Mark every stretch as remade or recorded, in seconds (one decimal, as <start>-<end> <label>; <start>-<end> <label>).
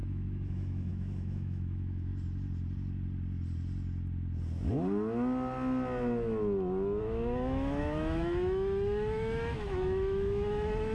0.0-2.1 remade; 2.1-7.0 recorded; 7.0-10.9 remade